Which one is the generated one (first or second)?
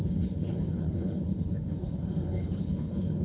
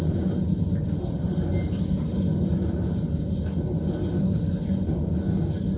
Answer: first